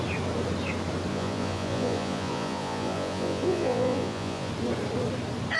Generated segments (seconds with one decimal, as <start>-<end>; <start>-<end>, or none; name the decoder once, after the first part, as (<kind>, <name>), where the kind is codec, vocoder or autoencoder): 1.1-4.5 (vocoder, Vocos)